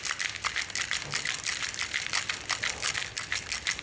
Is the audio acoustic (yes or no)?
yes